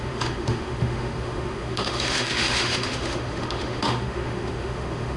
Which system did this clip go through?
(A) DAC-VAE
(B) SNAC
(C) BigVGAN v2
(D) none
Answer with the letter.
A